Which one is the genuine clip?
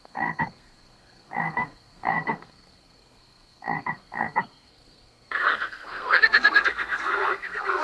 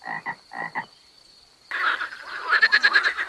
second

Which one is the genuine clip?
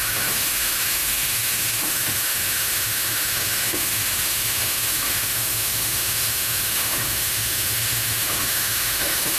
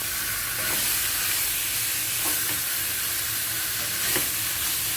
second